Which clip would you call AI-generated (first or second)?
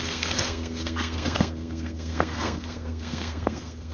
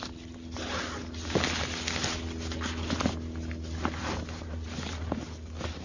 first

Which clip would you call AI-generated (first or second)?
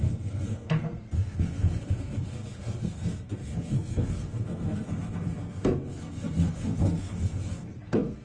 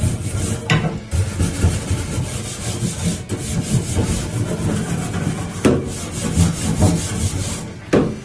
first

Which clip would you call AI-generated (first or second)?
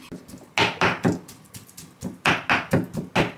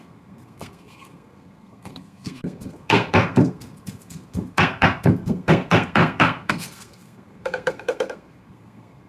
second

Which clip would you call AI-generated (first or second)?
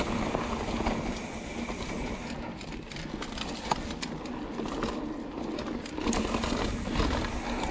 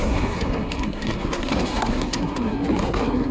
second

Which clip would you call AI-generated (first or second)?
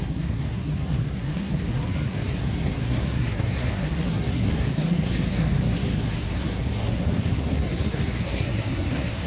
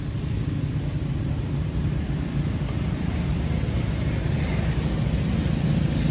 first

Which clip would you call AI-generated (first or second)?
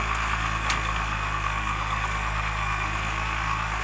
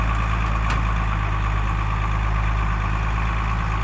first